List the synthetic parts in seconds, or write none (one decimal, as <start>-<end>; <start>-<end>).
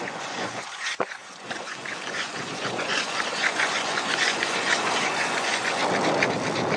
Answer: 0.0-5.8